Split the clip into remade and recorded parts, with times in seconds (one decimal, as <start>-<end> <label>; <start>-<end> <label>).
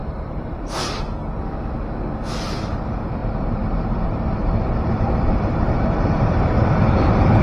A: 0.0-0.9 remade; 0.9-3.2 recorded; 3.2-7.4 remade